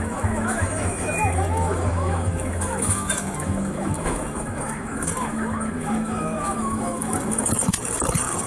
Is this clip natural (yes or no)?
no